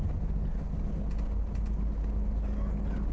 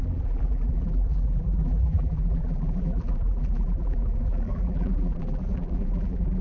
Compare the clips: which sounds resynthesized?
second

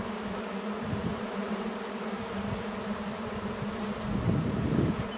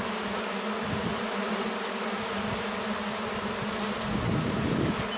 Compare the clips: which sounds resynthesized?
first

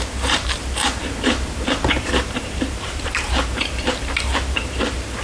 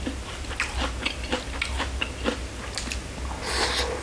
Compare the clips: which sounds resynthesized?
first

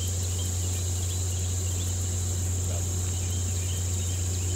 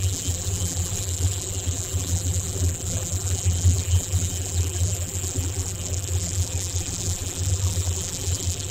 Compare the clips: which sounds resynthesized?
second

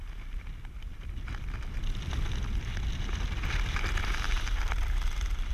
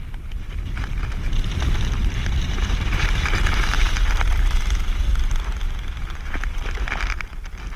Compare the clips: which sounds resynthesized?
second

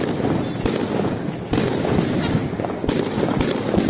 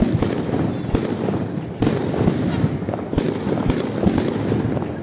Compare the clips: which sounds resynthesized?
second